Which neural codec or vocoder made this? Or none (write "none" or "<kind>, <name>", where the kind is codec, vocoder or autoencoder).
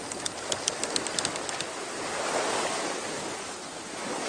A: none